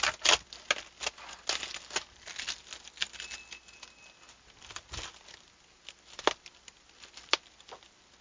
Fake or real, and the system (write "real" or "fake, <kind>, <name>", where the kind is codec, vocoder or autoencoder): real